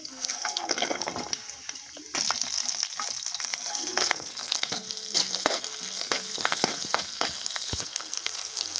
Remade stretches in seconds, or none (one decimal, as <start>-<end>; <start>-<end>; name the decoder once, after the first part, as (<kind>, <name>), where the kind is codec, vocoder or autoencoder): 0.0-1.1 (codec, SNAC); 3.4-8.8